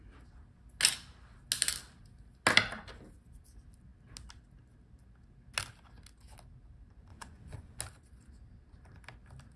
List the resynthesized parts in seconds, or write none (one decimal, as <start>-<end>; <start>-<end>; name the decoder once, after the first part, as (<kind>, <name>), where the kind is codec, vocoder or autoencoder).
7.1-7.8 (vocoder, Vocos)